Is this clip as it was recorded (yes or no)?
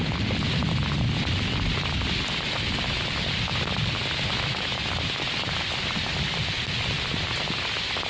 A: yes